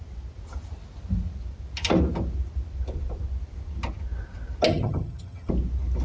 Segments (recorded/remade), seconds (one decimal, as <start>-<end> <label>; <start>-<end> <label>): 0.0-4.7 recorded; 4.7-5.5 remade; 5.5-6.0 recorded